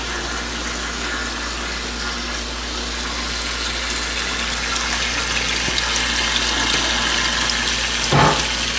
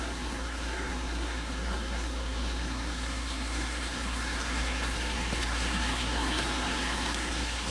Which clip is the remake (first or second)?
second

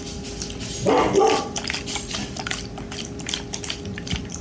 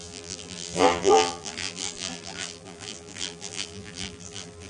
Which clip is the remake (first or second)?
second